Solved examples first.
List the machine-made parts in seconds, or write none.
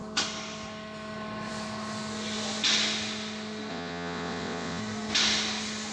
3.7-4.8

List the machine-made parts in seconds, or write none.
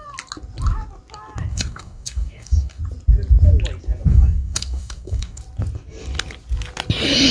1.5-2.8; 4.1-5.4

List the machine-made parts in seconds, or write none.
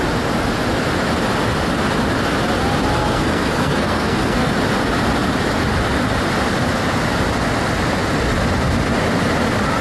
3.0-4.5